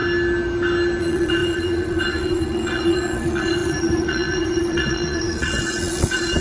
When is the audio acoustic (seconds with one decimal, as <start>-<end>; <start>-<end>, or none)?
0.0-1.0